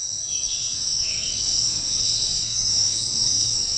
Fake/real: fake